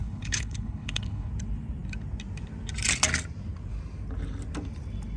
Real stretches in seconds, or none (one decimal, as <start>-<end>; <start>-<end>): 1.3-5.2